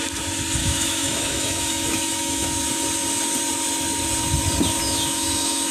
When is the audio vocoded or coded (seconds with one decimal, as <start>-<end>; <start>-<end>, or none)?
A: 0.6-2.7; 4.8-5.7